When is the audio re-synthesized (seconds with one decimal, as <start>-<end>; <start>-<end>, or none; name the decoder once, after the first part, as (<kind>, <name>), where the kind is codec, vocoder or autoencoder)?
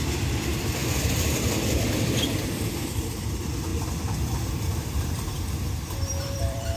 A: 0.0-6.8 (vocoder, BigVGAN v2)